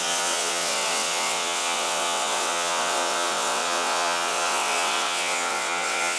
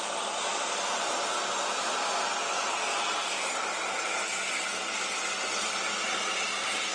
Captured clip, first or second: second